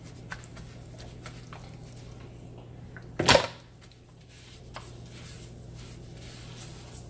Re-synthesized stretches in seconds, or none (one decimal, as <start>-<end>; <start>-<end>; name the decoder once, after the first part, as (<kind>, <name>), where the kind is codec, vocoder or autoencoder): none